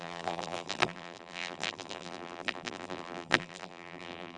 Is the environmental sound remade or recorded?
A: remade